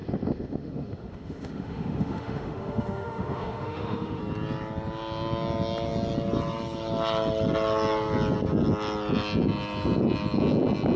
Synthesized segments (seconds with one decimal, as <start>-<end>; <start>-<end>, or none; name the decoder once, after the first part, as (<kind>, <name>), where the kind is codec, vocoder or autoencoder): 0.0-4.2 (autoencoder, DAC-VAE)